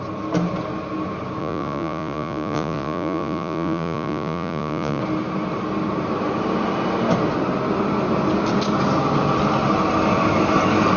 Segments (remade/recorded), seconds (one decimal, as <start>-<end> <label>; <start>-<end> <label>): 0.0-1.4 recorded; 1.4-5.0 remade; 5.0-11.0 recorded